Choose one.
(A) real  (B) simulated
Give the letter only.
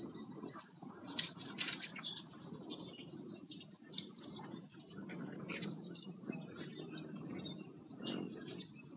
B